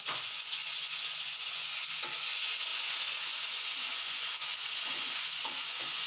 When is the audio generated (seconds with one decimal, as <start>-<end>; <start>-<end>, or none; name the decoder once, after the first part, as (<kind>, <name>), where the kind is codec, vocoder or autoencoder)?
0.0-6.1 (vocoder, Vocos)